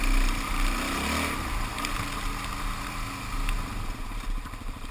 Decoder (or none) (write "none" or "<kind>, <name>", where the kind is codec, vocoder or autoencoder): none